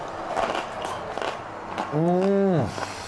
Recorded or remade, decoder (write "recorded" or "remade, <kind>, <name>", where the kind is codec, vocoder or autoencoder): recorded